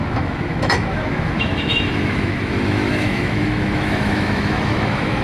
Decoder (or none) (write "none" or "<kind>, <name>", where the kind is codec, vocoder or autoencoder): autoencoder, DAC-VAE